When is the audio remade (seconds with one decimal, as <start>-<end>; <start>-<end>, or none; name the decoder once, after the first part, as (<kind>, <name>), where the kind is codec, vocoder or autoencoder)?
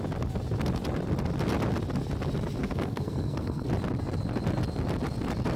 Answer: 2.6-3.7 (codec, SNAC)